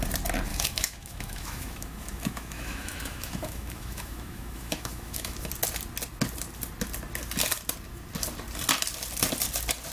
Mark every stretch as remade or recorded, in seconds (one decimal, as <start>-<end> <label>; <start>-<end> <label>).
0.0-0.5 recorded; 0.5-5.5 remade; 5.5-9.9 recorded

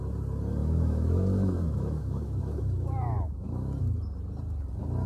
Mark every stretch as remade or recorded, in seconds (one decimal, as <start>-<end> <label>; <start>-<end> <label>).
0.0-0.6 recorded; 0.6-3.7 remade; 3.7-5.1 recorded

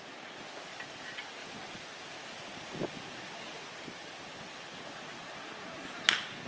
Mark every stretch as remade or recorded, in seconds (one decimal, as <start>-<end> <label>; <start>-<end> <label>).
0.0-6.5 recorded

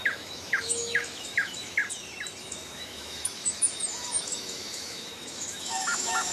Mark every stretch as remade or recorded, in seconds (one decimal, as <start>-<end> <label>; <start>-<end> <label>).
0.0-1.8 remade; 1.8-2.4 recorded; 2.4-6.3 remade

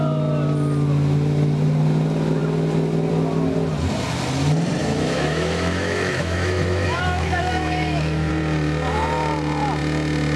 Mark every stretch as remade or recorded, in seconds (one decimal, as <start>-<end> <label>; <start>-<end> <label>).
0.0-4.8 recorded; 4.8-8.3 remade; 8.3-10.4 recorded